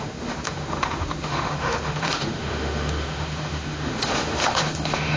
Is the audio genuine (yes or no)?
no